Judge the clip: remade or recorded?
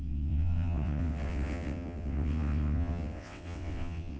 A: remade